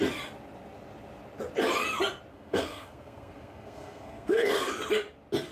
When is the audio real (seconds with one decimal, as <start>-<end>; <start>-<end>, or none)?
0.0-2.3; 4.7-5.5